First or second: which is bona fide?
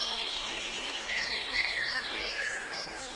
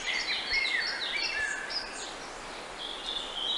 second